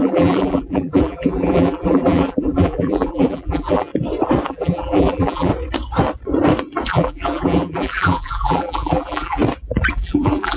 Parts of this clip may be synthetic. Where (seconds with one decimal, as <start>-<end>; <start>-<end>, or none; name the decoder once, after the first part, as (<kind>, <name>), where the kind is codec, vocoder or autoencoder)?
0.0-3.9 (vocoder, BigVGAN v2); 4.5-5.5; 6.9-9.4; 9.9-10.6